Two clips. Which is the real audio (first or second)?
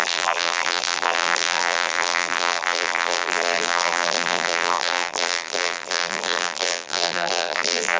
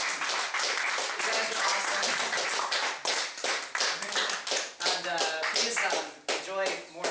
second